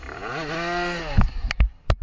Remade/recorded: recorded